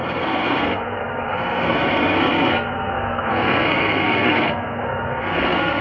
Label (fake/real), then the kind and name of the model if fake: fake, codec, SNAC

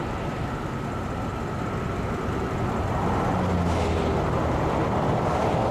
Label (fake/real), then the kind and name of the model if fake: real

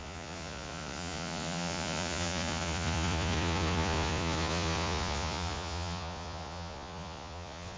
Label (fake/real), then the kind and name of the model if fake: fake, vocoder, Vocos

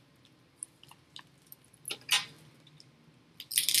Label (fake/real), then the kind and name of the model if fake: real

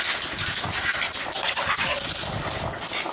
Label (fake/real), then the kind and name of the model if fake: real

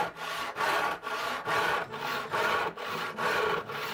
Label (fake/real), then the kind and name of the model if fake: fake, vocoder, BigVGAN v2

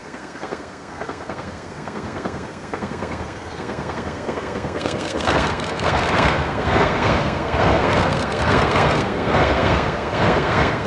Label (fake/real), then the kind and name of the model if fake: fake, codec, SNAC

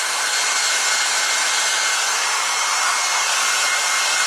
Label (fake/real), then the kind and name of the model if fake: real